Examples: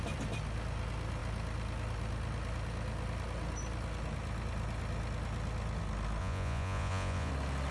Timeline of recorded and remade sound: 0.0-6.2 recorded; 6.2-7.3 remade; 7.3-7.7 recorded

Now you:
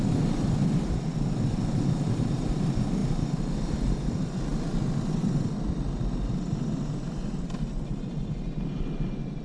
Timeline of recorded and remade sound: 0.0-9.4 recorded

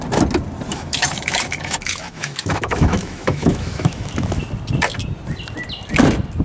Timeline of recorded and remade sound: 0.0-0.7 recorded; 0.7-4.1 remade; 4.1-6.4 recorded